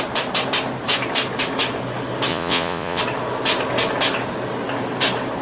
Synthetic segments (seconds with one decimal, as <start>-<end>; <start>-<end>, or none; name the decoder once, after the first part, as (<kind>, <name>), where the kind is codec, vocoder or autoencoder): 2.3-3.0 (vocoder, Vocos)